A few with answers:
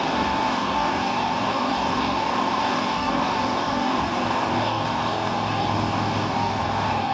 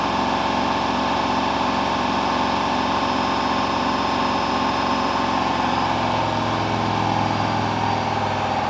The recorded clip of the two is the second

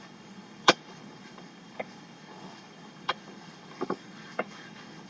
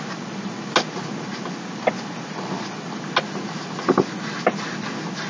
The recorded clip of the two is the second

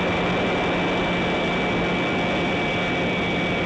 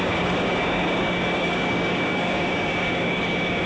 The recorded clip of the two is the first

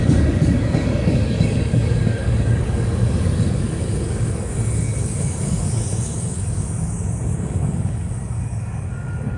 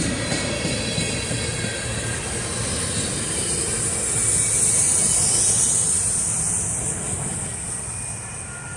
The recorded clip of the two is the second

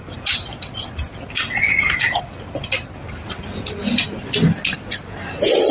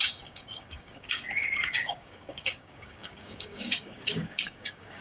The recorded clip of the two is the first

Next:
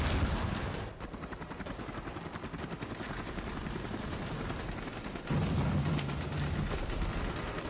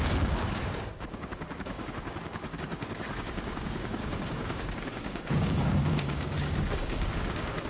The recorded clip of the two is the first